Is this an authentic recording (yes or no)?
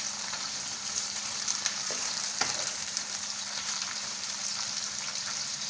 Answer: no